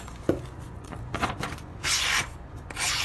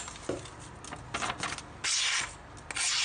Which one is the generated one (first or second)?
first